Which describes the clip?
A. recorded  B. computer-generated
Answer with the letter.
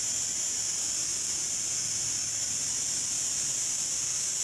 A